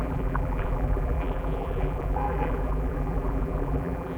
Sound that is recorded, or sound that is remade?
remade